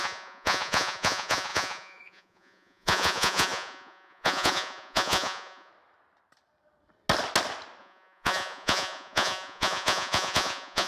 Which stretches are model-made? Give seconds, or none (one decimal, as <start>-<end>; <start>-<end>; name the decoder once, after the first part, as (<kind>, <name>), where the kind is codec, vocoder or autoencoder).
0.0-5.7 (vocoder, Vocos); 7.8-10.9